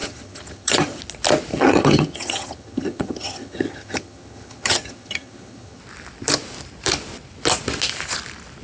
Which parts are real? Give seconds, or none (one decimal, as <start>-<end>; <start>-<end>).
1.0-1.5; 5.8-8.6